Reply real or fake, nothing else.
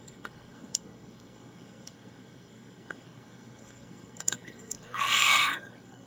fake